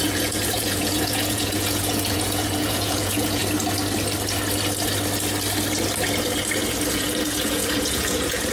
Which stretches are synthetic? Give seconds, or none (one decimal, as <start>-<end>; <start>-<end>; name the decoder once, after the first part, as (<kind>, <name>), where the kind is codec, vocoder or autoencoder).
0.0-3.4 (vocoder, Vocos); 6.9-8.5